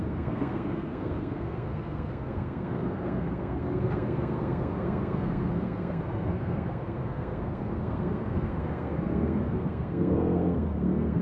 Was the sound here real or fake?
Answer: fake